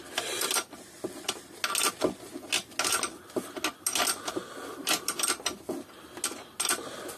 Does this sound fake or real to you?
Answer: real